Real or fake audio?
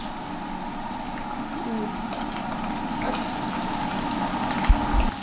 real